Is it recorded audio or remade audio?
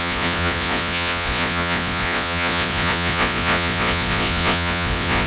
remade